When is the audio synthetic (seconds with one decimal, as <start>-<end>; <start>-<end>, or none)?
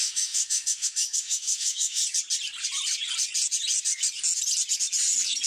0.0-2.0